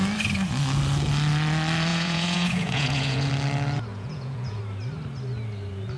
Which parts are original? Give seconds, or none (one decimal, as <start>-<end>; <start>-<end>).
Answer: 0.0-1.9; 3.3-3.9; 4.6-6.0